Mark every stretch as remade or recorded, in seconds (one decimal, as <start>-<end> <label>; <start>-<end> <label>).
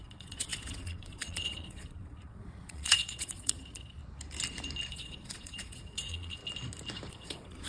0.0-4.0 remade; 4.0-4.9 recorded; 4.9-6.4 remade; 6.4-7.1 recorded; 7.1-7.7 remade